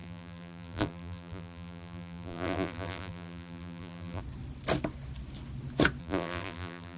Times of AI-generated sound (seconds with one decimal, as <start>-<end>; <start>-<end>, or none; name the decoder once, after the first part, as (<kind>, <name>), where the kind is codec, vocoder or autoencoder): 0.0-4.2 (vocoder, BigVGAN v2); 6.0-7.0